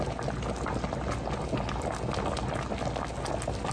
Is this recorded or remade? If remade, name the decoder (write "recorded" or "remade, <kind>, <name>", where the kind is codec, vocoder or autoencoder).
recorded